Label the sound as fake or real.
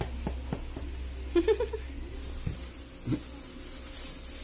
real